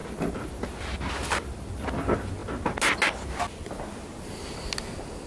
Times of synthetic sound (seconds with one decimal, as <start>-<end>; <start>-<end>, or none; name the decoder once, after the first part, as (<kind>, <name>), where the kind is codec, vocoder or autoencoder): none

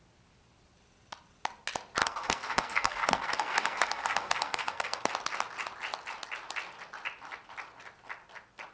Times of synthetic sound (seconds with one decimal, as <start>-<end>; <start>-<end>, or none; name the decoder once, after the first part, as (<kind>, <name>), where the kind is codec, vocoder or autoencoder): 2.0-5.1 (codec, SNAC)

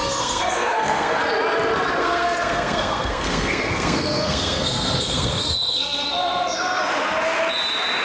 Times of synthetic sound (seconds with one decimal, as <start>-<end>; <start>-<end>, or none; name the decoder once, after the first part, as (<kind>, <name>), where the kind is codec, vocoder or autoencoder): 0.0-1.2 (codec, SNAC); 2.0-6.8

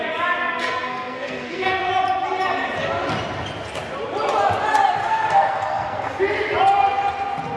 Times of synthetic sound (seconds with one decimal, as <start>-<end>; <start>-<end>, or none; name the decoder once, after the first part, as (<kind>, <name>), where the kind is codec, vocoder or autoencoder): 0.4-1.9 (codec, SNAC); 5.0-6.2

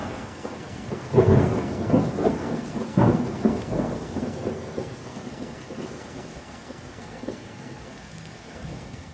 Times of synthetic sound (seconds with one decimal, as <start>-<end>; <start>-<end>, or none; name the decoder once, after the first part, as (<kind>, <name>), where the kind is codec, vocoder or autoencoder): 0.0-9.1 (codec, SNAC)

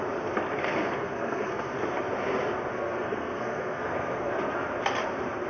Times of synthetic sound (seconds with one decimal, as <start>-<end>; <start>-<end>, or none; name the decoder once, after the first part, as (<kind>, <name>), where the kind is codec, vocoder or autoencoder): 1.0-1.7 (codec, SNAC); 2.7-4.3

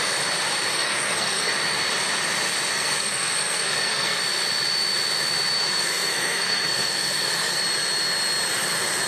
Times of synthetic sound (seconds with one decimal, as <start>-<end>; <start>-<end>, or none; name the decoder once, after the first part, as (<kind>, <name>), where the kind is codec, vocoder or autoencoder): 0.7-1.5 (codec, SNAC); 2.7-4.2; 5.7-7.6